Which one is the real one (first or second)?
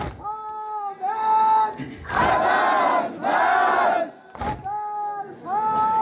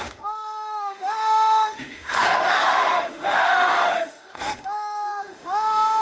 first